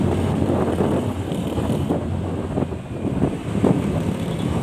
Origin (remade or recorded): recorded